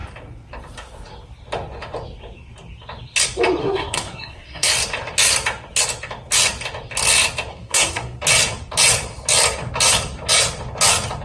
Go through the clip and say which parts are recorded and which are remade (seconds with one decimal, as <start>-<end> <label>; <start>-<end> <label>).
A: 0.0-3.6 recorded; 3.6-4.7 remade; 4.7-7.5 recorded; 7.5-8.2 remade; 8.2-11.2 recorded